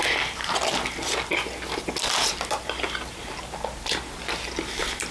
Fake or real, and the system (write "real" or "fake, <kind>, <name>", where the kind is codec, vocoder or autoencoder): real